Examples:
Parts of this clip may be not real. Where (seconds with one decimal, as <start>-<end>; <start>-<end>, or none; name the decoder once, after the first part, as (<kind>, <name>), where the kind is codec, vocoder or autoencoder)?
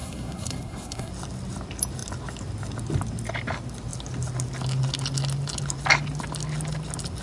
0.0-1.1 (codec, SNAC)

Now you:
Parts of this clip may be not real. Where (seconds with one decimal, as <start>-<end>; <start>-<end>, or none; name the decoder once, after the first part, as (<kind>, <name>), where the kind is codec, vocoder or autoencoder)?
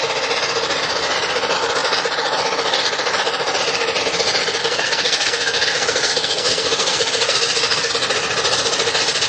4.6-7.9 (codec, SNAC)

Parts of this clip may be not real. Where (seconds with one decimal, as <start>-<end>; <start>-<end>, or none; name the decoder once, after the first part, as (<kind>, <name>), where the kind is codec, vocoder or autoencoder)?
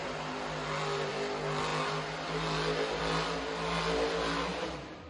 none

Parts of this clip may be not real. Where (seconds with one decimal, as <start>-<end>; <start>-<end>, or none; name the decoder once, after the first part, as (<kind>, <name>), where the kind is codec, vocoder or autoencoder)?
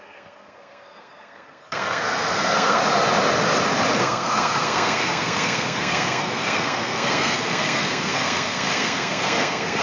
0.0-2.8 (codec, SNAC); 4.0-9.8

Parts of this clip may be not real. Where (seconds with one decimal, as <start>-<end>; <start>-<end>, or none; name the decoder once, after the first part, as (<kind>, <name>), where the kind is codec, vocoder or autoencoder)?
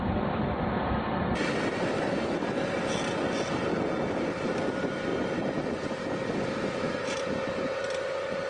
none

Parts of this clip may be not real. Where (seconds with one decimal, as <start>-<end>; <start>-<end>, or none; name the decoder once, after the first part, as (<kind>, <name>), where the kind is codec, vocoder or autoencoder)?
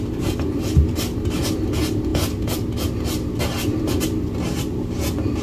none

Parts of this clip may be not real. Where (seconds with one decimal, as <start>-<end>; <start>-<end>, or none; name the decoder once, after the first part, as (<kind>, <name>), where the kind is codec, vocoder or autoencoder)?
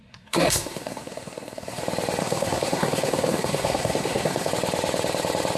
0.0-1.8 (codec, SNAC); 2.2-4.5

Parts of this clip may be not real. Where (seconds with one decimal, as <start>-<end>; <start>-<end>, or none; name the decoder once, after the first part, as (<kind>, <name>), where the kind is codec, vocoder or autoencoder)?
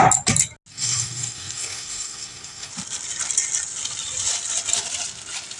0.7-2.7 (codec, SNAC)